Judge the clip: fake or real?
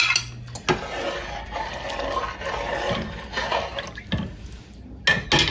real